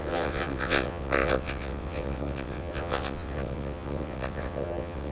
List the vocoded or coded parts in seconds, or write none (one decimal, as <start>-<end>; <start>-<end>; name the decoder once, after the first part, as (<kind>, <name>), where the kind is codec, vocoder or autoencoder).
0.0-5.1 (vocoder, WaveNeXt)

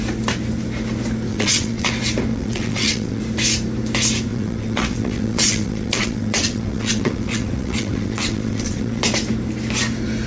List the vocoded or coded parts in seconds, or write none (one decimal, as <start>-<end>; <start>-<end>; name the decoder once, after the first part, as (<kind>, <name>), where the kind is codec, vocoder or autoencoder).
1.3-1.9 (vocoder, WaveNeXt); 2.3-3.2; 4.3-9.0

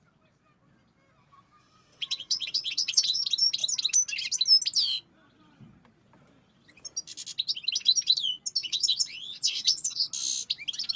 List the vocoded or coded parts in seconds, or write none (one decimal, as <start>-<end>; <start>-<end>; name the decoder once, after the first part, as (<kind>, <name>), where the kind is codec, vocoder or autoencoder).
1.6-3.2 (vocoder, WaveNeXt); 8.6-10.0